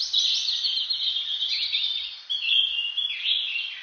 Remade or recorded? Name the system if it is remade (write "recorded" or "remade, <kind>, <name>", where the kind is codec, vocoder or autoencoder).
recorded